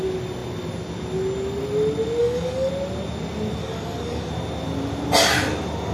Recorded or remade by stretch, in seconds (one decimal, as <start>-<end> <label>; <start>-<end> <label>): 0.0-2.2 recorded; 2.2-2.7 remade; 2.7-3.6 recorded; 3.6-4.3 remade; 4.3-5.9 recorded